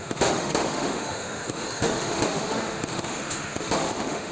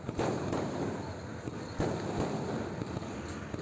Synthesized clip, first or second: first